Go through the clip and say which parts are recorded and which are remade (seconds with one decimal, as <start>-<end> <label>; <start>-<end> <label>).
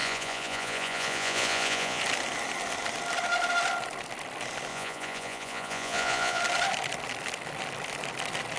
0.0-2.0 remade; 2.0-4.7 recorded; 4.7-6.4 remade; 6.4-8.6 recorded